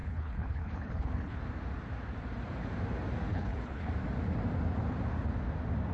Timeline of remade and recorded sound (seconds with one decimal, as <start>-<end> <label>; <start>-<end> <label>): 0.0-1.4 remade; 1.4-3.3 recorded; 3.3-3.9 remade; 3.9-5.9 recorded